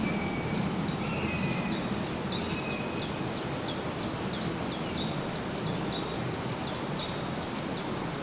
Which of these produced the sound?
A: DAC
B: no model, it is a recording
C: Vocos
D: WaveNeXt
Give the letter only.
B